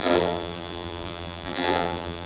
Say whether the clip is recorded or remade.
remade